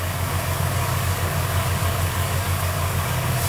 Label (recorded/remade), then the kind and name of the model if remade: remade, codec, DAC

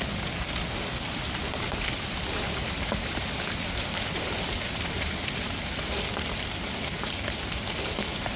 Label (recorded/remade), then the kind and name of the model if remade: recorded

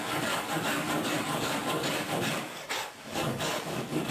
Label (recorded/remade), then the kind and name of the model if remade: remade, codec, DAC